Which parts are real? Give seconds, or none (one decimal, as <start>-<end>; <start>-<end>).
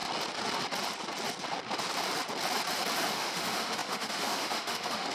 0.0-3.1